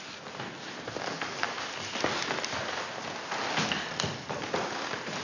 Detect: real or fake real